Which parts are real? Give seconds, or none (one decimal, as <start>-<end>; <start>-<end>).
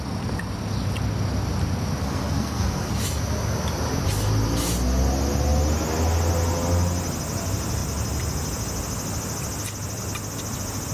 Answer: 0.0-2.0; 3.0-10.9